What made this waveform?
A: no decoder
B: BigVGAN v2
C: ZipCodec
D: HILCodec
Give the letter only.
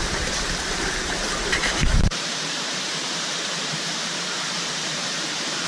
B